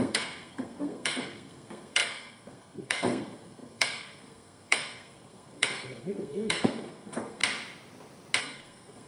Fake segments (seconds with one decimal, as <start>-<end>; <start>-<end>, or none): 0.0-7.4; 8.4-9.1